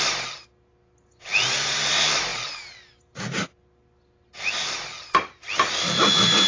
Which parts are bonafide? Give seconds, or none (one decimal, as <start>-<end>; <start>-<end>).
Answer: 0.0-6.5